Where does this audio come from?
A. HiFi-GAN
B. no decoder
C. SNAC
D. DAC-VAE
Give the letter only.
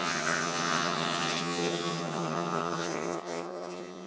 A